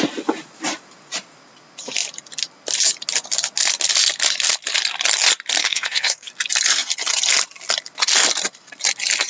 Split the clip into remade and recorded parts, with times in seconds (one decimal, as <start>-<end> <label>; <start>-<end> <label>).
0.0-5.6 recorded; 5.6-6.3 remade; 6.3-9.3 recorded